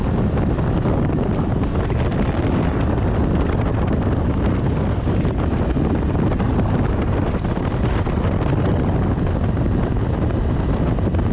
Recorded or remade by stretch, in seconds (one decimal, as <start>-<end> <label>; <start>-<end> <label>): 0.0-11.3 recorded